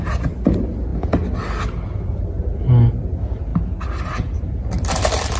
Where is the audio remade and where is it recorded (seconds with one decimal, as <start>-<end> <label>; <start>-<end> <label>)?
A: 0.0-5.4 recorded